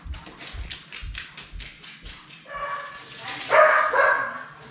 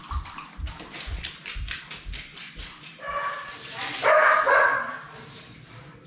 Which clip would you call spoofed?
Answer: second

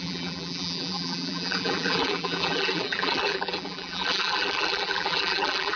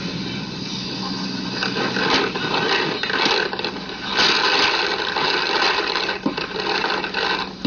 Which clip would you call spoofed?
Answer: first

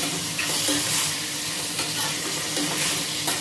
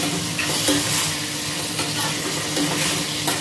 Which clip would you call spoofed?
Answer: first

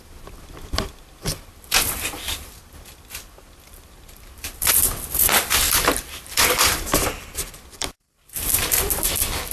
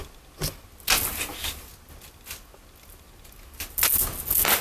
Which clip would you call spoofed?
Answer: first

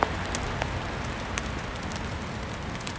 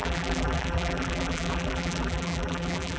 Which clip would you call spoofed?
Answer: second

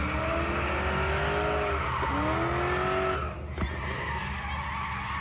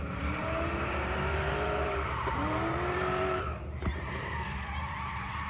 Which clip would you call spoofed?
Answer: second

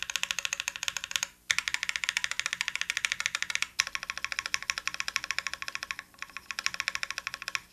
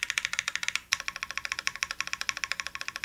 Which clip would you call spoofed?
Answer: second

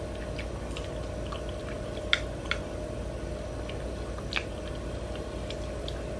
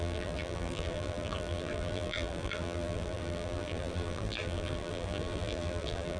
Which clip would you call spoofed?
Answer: second